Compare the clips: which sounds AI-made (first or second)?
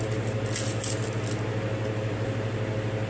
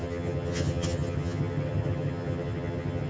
second